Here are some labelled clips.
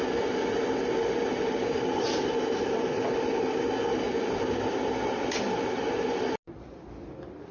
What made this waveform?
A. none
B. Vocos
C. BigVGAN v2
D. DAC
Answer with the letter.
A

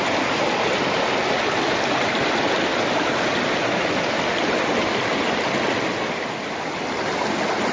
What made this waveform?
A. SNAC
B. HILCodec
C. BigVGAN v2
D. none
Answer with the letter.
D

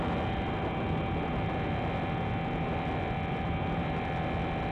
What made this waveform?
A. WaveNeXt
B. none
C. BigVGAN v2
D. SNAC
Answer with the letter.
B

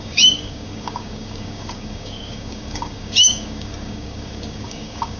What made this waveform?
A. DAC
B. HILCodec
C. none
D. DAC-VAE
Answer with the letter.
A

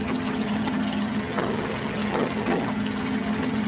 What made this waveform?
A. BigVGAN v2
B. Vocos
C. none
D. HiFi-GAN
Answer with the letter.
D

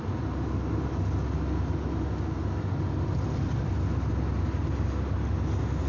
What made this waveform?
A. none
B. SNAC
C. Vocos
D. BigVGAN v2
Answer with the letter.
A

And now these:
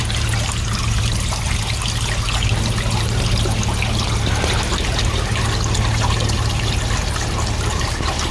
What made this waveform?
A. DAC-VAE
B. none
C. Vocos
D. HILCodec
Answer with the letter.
B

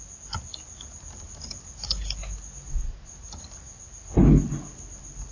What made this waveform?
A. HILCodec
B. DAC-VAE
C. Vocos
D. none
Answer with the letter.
D